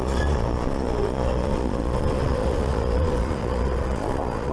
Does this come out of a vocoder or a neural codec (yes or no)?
yes